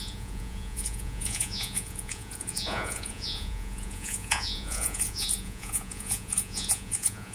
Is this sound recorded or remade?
remade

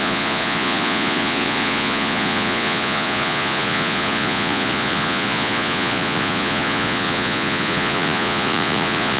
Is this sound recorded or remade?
remade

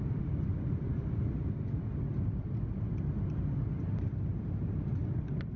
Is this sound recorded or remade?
recorded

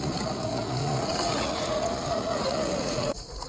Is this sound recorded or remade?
remade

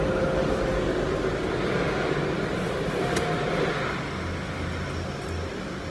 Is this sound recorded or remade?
recorded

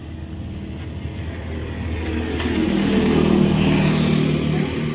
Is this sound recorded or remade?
recorded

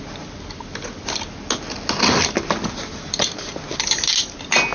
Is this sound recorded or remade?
recorded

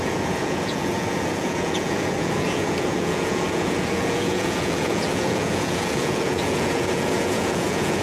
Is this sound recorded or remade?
remade